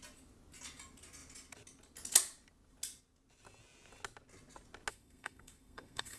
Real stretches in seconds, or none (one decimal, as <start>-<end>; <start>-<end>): 0.0-4.9